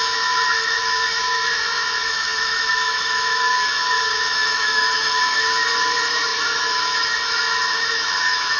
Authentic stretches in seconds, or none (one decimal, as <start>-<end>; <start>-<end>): none